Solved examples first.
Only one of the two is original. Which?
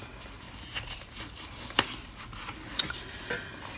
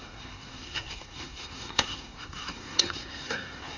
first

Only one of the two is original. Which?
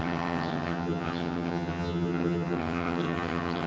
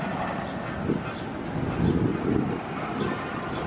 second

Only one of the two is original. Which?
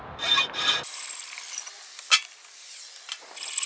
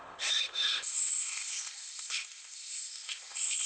first